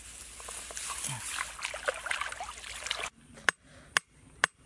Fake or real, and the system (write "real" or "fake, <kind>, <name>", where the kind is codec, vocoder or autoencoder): real